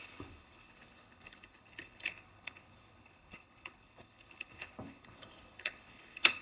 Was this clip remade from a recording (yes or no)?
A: yes